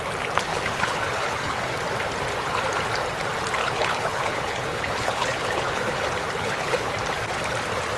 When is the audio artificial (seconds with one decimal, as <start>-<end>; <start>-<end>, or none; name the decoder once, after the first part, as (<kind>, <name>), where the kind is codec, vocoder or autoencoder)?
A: 0.5-1.7 (codec, HILCodec); 3.6-6.0; 6.4-6.9